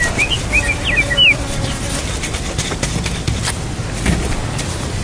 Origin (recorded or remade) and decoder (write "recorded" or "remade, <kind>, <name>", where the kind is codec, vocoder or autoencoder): recorded